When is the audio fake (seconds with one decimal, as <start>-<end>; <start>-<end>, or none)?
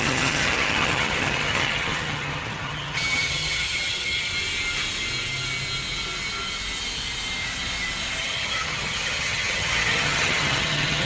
0.0-4.3; 8.2-11.0